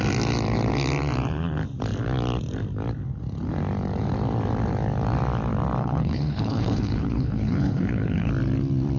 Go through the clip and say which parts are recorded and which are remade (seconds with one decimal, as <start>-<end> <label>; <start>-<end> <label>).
0.0-5.8 recorded; 5.8-8.3 remade; 8.3-9.0 recorded